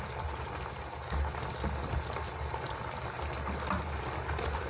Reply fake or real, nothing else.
real